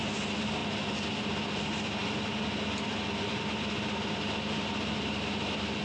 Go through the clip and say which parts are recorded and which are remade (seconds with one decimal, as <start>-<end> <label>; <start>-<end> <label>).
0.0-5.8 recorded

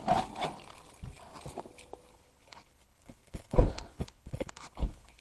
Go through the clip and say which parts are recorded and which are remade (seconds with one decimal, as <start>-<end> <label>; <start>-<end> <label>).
0.0-2.1 recorded; 2.1-5.2 remade

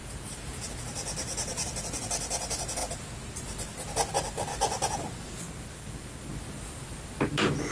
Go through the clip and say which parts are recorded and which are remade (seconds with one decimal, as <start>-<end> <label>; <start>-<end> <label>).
0.0-0.7 remade; 0.7-7.7 recorded

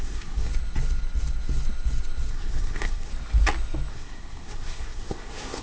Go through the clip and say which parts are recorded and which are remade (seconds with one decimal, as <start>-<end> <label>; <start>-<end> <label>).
0.0-0.5 remade; 0.5-2.3 recorded; 2.3-3.1 remade; 3.1-3.9 recorded; 3.9-5.6 remade

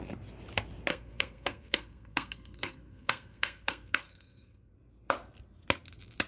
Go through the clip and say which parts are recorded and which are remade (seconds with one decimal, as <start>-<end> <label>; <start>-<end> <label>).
0.0-0.9 recorded; 0.9-4.7 remade; 4.7-6.3 recorded